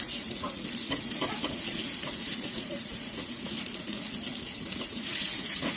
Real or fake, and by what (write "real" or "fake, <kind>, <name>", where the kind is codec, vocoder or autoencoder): fake, vocoder, Vocos